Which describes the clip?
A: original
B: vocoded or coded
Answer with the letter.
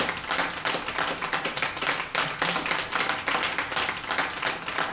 A